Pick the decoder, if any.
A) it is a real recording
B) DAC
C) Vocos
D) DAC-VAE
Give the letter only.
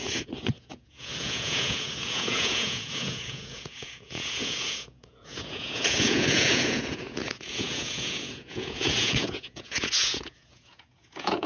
C